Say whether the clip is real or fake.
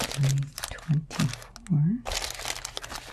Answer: real